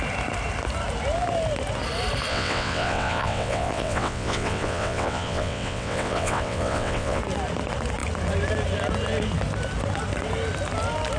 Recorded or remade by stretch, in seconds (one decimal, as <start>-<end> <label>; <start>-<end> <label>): 0.0-2.3 recorded; 2.3-7.2 remade; 7.2-11.2 recorded